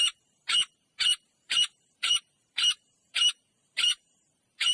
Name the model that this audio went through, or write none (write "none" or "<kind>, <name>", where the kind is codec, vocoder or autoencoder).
vocoder, BigVGAN v2